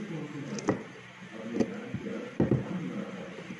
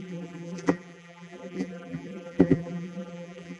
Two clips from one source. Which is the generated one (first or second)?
second